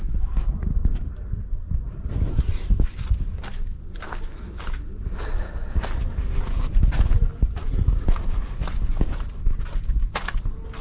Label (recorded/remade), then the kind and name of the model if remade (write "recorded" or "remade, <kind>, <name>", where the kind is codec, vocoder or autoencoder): recorded